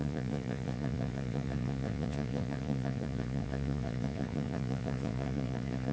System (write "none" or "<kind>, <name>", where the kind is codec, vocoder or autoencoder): vocoder, Vocos